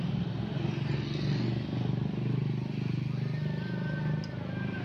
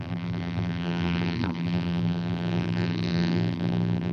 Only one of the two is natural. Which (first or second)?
first